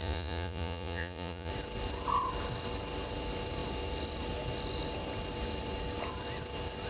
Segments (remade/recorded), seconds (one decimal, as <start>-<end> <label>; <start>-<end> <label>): 0.0-1.5 remade; 1.5-6.9 recorded